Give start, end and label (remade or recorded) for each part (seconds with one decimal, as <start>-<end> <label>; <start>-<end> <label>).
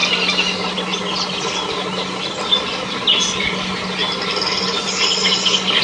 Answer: 0.0-5.8 recorded